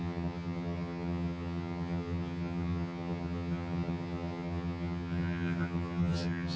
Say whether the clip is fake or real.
fake